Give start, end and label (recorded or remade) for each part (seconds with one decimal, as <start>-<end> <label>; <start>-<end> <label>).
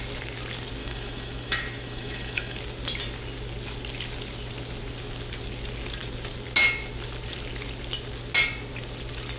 0.0-0.8 recorded; 0.8-2.6 remade; 2.6-9.4 recorded